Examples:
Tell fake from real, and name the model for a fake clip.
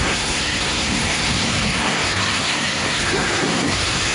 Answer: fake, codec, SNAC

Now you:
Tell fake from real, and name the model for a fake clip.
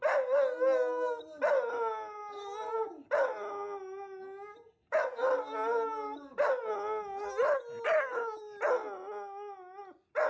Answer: real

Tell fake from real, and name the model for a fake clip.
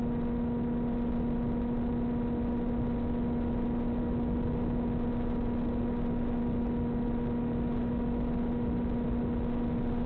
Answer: real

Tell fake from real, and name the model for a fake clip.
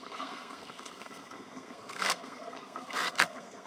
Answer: fake, codec, SNAC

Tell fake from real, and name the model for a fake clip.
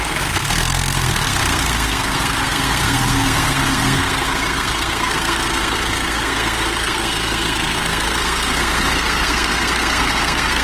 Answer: fake, codec, SNAC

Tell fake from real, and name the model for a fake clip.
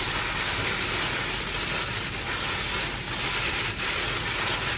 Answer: real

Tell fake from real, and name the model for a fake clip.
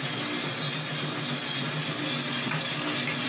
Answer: real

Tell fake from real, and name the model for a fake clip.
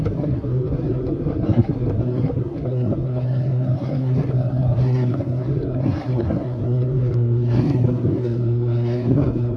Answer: fake, codec, SNAC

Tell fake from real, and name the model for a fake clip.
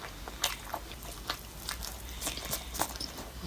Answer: real